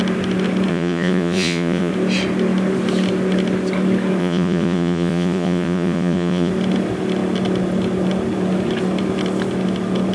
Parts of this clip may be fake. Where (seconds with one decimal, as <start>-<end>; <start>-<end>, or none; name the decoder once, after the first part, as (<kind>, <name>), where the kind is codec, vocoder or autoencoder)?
0.7-1.9 (vocoder, Vocos); 4.2-6.5